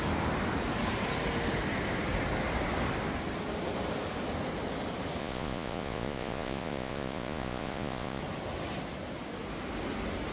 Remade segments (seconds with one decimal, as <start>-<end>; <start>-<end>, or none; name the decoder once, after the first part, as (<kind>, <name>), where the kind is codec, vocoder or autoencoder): 5.2-8.2 (vocoder, Vocos)